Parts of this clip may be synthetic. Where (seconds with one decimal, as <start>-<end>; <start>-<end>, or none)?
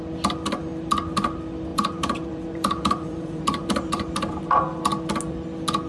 1.7-4.4